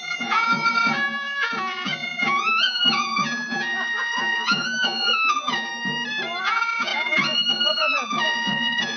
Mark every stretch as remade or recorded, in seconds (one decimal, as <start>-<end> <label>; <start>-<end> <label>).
0.0-5.7 remade; 5.7-6.4 recorded; 6.4-9.0 remade